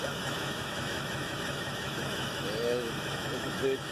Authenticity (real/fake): fake